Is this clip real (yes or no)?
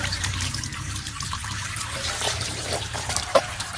no